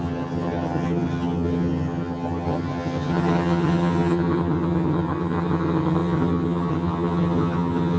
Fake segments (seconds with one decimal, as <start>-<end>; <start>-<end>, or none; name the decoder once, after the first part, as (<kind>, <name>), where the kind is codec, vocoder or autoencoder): 0.0-8.0 (vocoder, HiFi-GAN)